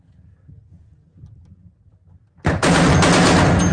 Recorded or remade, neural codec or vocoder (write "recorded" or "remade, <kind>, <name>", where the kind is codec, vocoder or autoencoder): recorded